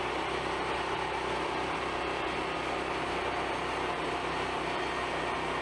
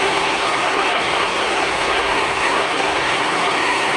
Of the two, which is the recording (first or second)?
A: first